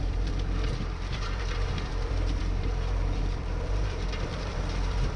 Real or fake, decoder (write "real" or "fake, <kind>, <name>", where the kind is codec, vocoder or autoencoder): fake, vocoder, BigVGAN v2